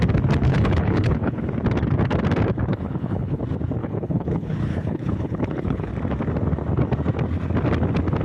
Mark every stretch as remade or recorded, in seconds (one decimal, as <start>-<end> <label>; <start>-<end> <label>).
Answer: 0.0-0.5 recorded; 0.5-1.5 remade; 1.5-2.7 recorded; 2.7-3.4 remade; 3.4-3.8 recorded; 3.8-5.9 remade; 5.9-8.2 recorded